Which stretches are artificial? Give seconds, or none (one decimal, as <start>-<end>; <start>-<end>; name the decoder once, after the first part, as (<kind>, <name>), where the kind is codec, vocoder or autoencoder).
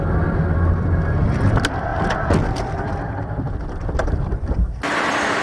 0.0-5.4 (vocoder, BigVGAN v2)